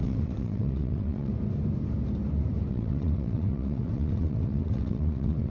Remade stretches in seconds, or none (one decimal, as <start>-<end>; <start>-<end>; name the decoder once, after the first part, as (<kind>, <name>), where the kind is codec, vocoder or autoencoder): 0.0-1.3 (vocoder, WaveNeXt); 2.7-5.5